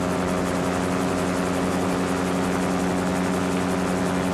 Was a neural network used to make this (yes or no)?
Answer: no